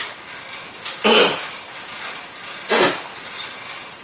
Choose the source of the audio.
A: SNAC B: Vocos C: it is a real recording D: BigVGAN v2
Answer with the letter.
C